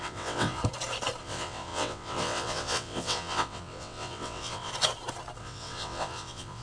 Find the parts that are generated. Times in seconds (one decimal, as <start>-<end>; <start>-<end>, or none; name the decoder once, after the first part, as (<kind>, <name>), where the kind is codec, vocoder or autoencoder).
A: 0.0-0.6 (vocoder, WaveNeXt); 1.2-4.7; 5.4-6.6